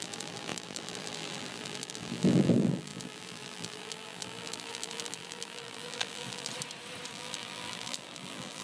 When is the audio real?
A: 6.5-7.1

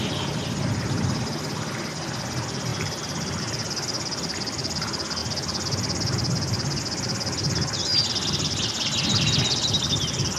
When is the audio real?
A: 0.0-2.7; 3.4-10.4

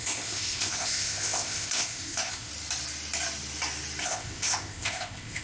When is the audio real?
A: 2.5-4.0

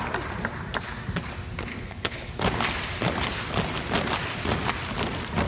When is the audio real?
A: 0.0-1.7; 2.3-5.5

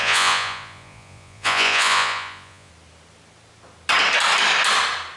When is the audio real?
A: 2.7-5.2